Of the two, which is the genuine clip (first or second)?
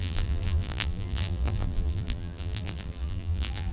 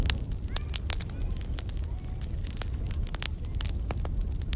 second